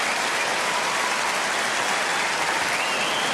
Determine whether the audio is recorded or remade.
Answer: recorded